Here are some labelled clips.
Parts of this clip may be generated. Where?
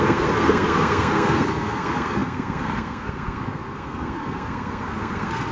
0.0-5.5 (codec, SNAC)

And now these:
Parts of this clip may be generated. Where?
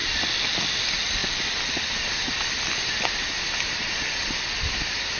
none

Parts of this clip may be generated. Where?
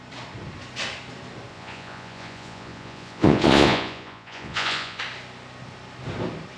1.5-5.0 (vocoder, Vocos)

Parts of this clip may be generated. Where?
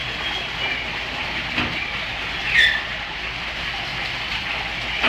none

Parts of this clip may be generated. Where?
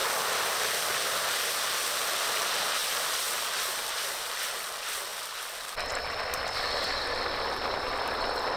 0.0-0.9 (vocoder, BigVGAN v2); 2.8-4.5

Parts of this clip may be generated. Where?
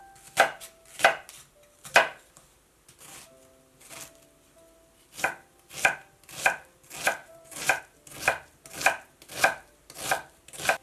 7.2-7.8 (vocoder, BigVGAN v2)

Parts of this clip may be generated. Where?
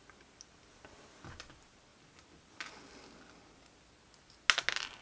none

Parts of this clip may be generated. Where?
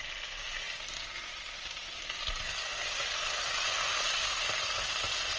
none